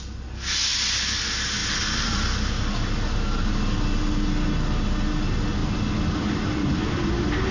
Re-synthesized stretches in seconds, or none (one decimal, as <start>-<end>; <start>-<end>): 1.6-2.5; 5.6-7.1